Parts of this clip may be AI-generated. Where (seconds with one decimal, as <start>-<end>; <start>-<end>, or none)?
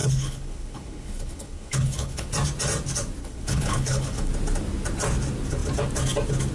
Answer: 0.0-2.3; 3.2-4.3